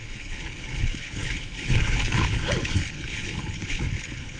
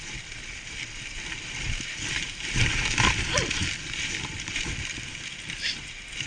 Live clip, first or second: second